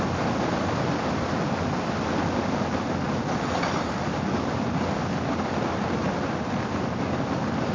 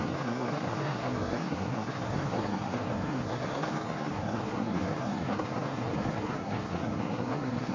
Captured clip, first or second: first